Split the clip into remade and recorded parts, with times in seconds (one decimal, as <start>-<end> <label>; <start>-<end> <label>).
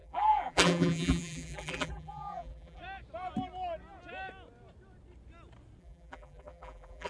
0.0-2.8 remade; 2.8-5.8 recorded; 5.8-7.1 remade